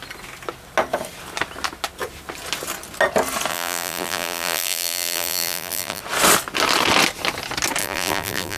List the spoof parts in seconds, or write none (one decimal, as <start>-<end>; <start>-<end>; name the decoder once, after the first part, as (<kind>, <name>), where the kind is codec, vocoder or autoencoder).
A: 3.5-6.0 (vocoder, BigVGAN v2); 7.8-8.6